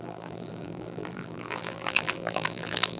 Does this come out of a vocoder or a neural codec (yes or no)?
yes